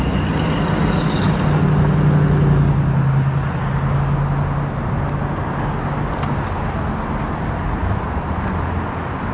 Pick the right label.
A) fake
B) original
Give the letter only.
B